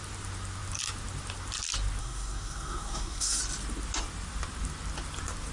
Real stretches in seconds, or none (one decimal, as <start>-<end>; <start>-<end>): 0.0-2.0; 3.4-5.5